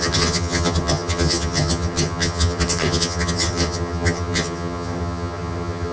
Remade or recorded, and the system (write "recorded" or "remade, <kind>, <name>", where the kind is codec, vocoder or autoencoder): remade, vocoder, HiFi-GAN